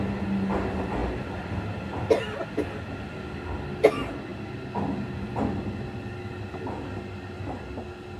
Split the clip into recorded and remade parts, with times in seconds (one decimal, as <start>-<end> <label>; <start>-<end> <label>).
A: 0.0-8.2 recorded